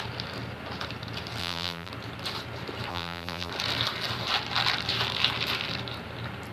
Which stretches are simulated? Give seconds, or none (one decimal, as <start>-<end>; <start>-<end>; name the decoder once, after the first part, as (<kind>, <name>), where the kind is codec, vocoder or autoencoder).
1.4-1.9 (vocoder, BigVGAN v2); 2.9-3.5